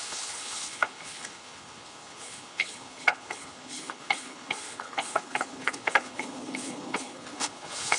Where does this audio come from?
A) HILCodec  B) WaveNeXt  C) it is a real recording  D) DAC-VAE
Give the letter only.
A